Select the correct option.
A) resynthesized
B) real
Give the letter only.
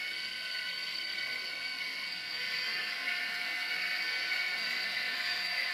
A